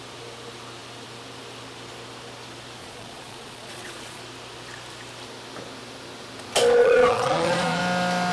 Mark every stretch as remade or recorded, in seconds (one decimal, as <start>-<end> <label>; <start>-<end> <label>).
0.0-2.8 recorded; 2.8-4.2 remade; 4.2-6.8 recorded; 6.8-7.8 remade; 7.8-8.3 recorded